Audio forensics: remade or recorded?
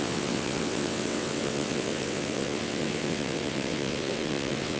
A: remade